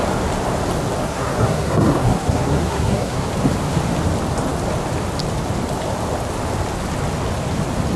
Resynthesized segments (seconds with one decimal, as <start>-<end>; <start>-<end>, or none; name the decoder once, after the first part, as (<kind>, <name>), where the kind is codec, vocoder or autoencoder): 1.0-3.3 (codec, SNAC)

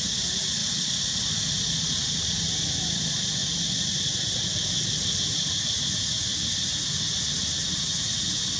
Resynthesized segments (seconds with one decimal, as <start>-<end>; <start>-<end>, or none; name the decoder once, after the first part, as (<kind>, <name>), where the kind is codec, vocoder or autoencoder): none